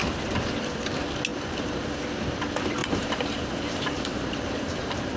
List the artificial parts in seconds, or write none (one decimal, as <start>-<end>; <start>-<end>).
1.3-1.9; 2.8-5.2